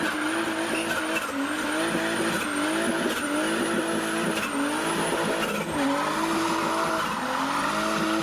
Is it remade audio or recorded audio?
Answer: recorded